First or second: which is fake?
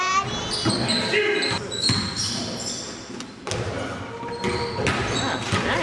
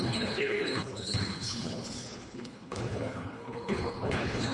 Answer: second